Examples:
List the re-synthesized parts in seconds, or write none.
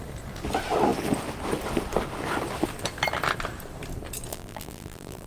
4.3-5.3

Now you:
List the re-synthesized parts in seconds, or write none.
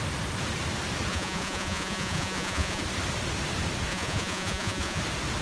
1.1-2.8; 3.9-5.0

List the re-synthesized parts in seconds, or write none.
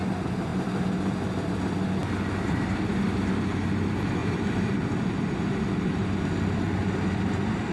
0.5-1.6; 4.2-5.5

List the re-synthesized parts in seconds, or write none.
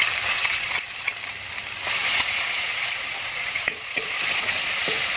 0.4-1.1; 2.0-4.8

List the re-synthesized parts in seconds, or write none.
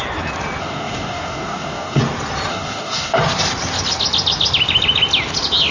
0.6-2.0; 2.5-3.2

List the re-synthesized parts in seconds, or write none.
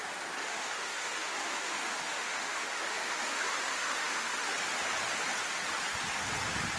0.4-4.5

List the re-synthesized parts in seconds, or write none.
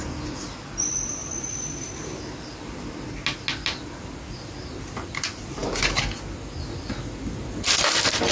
none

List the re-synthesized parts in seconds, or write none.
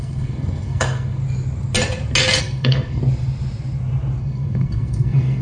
0.0-1.2; 2.4-3.0; 4.2-5.4